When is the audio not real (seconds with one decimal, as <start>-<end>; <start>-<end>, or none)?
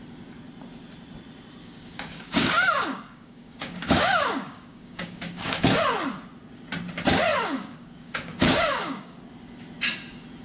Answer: 1.6-5.8; 7.3-9.2